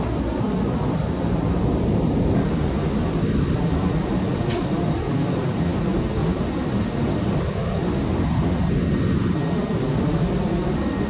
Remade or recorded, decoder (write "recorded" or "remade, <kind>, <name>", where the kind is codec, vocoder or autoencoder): recorded